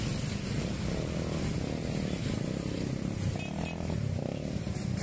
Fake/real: real